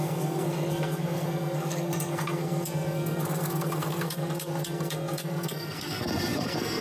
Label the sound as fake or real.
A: fake